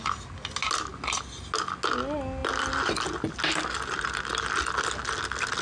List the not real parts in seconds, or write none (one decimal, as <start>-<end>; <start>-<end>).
none